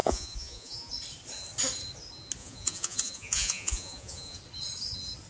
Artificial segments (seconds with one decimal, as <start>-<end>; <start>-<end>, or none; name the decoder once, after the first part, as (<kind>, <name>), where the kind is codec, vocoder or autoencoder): 0.0-0.9 (vocoder, Vocos); 2.4-4.4